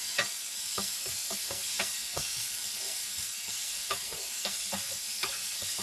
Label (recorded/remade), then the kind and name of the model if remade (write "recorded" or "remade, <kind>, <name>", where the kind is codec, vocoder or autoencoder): remade, codec, SNAC